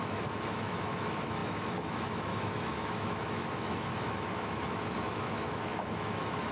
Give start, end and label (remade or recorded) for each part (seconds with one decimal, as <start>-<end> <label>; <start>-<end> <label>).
0.0-6.5 remade